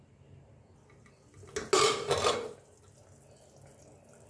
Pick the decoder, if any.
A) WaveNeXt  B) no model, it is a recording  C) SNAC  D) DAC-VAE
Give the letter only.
B